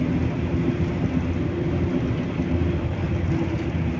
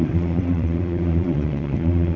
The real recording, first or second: first